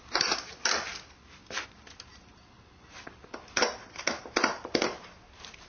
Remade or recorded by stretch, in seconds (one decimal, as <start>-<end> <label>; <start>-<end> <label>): 0.0-1.4 remade; 1.4-3.6 recorded; 3.6-5.7 remade